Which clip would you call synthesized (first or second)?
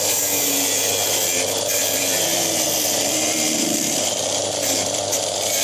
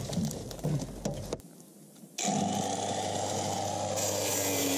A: first